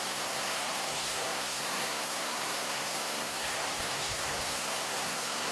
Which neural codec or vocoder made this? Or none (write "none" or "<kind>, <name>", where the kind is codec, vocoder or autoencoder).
codec, SNAC